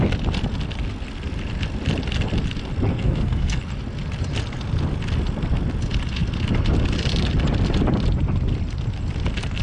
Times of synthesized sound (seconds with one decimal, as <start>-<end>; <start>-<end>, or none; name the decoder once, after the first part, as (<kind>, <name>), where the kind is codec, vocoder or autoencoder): 2.9-3.6 (codec, SNAC)

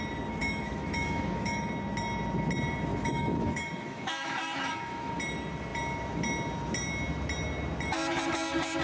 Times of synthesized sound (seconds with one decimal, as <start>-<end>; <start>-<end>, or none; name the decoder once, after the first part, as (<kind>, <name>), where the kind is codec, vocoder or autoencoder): 0.4-1.7 (autoencoder, DAC-VAE); 2.9-5.1

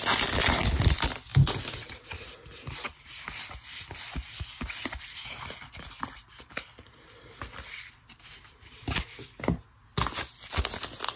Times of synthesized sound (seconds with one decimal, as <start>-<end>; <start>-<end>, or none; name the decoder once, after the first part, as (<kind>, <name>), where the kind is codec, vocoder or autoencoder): none

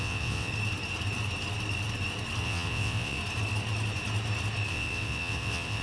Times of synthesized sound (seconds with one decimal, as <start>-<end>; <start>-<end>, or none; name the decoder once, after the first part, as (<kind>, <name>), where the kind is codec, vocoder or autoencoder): 0.0-0.5 (vocoder, WaveNeXt); 2.4-3.2; 4.7-5.8

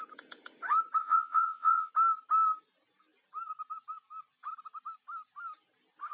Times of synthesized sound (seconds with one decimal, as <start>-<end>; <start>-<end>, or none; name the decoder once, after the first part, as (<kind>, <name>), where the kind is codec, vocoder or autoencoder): 1.0-1.9 (vocoder, Vocos)

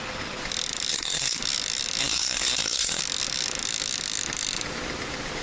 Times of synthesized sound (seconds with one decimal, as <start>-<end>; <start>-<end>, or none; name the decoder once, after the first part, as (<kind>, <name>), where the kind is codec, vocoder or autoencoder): 0.9-1.4 (codec, SNAC); 2.0-3.0

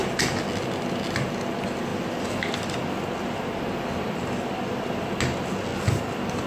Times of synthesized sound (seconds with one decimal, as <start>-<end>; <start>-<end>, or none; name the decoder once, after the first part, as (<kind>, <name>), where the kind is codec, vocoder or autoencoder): none

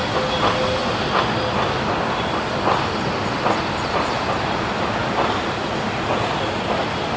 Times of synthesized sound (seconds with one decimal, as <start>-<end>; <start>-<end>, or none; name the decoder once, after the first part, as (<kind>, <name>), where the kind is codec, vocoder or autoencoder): none